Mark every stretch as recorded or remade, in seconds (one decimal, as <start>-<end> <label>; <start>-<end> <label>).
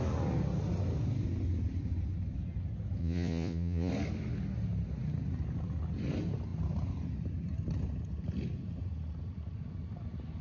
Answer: 0.0-3.0 recorded; 3.0-3.9 remade; 3.9-10.4 recorded